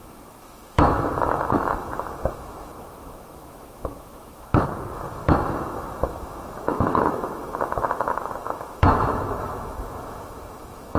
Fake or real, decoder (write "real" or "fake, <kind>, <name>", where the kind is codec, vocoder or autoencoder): fake, autoencoder, DAC-VAE